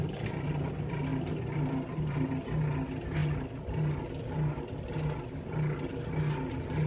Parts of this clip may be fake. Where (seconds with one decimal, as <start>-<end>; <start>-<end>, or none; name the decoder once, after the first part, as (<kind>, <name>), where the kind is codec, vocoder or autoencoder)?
0.0-0.7 (vocoder, BigVGAN v2)